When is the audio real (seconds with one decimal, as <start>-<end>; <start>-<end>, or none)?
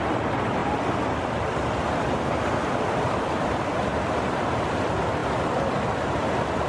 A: 3.9-4.4; 5.2-5.8